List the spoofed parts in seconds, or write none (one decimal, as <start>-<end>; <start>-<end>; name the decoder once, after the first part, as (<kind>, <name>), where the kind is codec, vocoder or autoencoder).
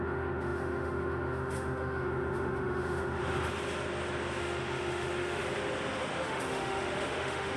0.0-3.2 (autoencoder, DAC-VAE); 4.4-5.4; 6.0-7.6